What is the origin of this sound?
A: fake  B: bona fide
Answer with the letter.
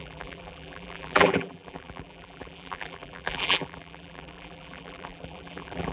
A